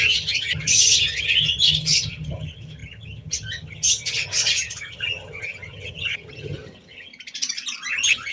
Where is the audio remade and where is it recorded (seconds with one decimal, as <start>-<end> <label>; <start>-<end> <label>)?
0.0-7.1 remade; 7.1-7.9 recorded; 7.9-8.3 remade